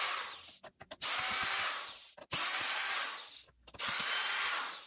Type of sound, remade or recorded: recorded